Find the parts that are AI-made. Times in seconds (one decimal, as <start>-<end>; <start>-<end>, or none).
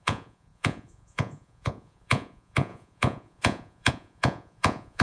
0.0-5.0